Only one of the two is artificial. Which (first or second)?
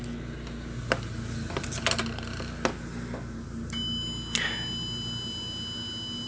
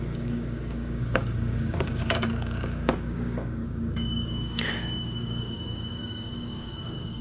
second